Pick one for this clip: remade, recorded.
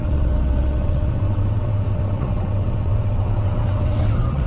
remade